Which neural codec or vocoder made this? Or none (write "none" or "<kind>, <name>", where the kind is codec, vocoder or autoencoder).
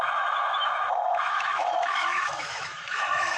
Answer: autoencoder, DAC-VAE